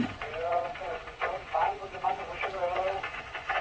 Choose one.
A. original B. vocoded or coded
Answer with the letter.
B